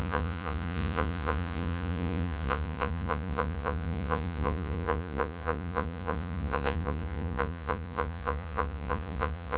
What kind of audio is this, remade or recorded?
remade